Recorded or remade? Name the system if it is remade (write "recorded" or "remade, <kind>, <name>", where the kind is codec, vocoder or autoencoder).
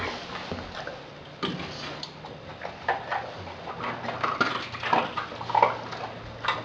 recorded